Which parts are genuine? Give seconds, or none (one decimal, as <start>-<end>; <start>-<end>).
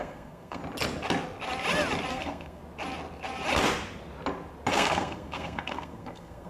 0.6-2.1; 2.6-4.7